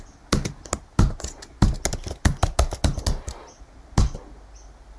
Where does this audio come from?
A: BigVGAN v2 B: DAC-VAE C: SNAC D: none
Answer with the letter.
D